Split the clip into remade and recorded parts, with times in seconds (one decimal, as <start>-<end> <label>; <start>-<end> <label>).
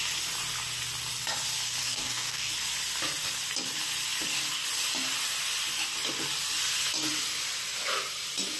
0.0-1.8 recorded; 1.8-2.5 remade; 2.5-8.6 recorded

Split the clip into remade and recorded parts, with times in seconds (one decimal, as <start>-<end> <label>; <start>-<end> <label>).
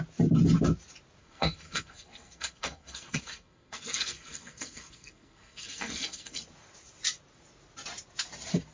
0.0-1.2 recorded; 1.2-6.4 remade; 6.4-8.7 recorded